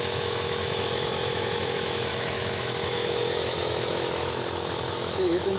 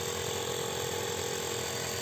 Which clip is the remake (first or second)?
first